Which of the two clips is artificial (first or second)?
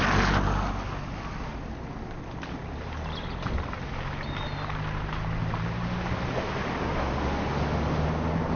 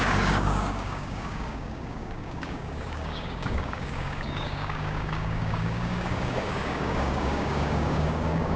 second